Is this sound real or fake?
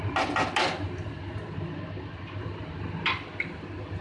real